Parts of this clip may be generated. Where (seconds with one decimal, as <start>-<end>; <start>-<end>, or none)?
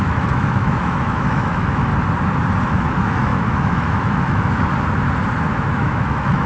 0.0-1.9; 2.7-4.7; 5.6-6.5